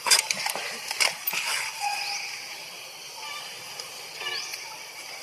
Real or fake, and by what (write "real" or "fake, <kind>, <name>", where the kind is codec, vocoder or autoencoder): fake, vocoder, BigVGAN v2